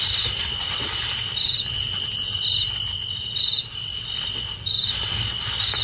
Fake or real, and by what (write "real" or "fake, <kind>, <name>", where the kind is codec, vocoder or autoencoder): real